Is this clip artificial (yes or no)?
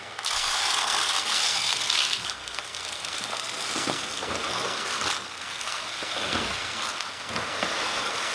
yes